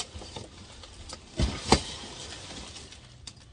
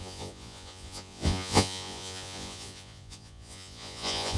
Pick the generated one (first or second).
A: second